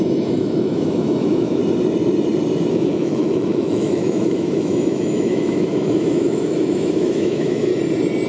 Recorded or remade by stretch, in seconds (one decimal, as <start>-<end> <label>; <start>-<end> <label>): 0.0-1.6 remade; 1.6-2.7 recorded; 2.7-7.7 remade; 7.7-8.3 recorded